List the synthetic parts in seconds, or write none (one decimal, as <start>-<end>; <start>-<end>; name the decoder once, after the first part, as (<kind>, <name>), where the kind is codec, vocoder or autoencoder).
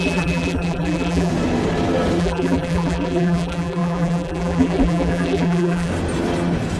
0.0-1.3 (vocoder, BigVGAN v2); 2.2-5.9